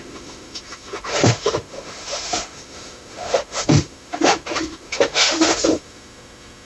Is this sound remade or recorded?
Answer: remade